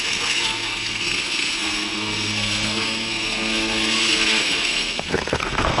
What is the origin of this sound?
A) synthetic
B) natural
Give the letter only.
A